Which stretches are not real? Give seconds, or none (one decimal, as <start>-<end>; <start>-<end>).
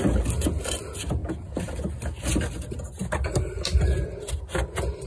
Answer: none